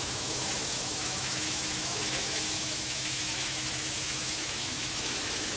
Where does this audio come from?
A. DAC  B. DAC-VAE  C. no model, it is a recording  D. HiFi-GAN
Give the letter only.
B